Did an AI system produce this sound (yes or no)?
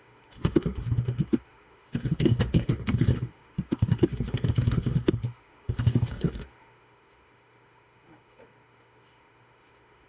yes